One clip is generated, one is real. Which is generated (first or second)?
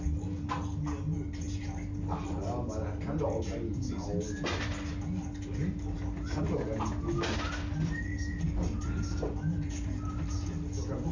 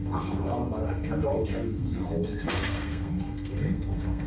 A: second